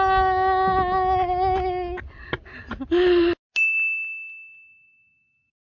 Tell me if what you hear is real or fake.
real